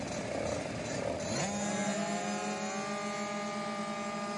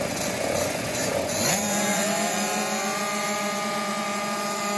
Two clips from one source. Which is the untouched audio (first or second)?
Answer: first